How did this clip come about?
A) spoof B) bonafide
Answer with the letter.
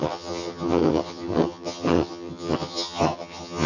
A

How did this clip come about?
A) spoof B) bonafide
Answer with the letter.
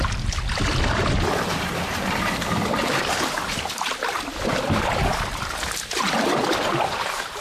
B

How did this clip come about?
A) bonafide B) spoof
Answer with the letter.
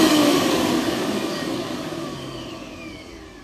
B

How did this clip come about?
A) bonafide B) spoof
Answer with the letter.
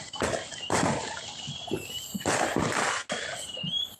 A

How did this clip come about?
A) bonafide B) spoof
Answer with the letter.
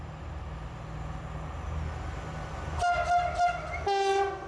A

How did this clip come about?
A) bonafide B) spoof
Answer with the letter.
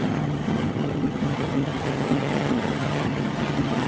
B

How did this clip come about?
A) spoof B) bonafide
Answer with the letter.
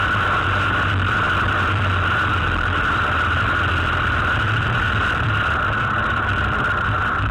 A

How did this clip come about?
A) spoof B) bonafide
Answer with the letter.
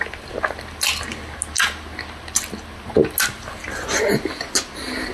B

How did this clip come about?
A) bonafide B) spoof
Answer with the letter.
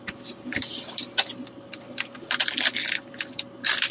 A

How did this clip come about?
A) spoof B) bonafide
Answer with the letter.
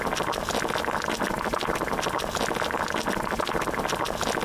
B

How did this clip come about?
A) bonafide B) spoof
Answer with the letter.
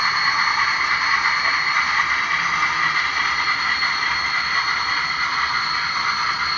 A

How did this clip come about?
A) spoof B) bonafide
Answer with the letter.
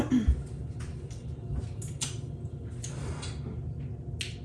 B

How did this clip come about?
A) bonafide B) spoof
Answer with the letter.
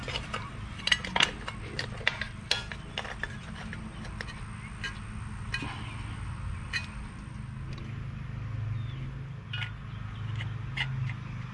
A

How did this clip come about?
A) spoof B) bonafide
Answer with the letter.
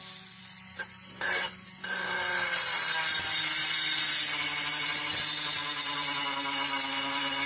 B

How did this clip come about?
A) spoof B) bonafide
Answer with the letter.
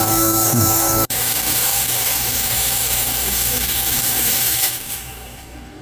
A